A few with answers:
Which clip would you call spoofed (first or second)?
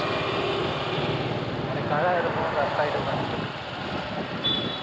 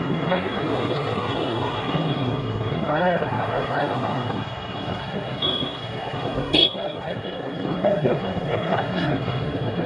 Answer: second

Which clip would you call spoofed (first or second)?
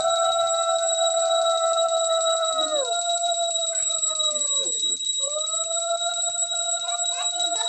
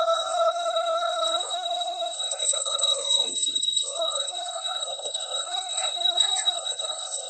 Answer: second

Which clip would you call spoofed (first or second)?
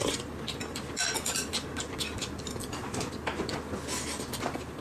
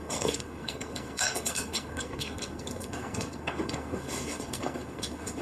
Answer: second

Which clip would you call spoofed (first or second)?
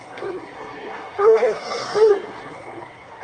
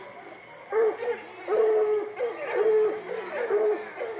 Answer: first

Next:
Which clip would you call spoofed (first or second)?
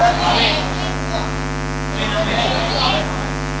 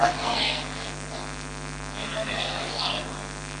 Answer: second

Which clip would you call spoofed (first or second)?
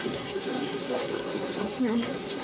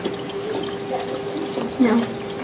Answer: first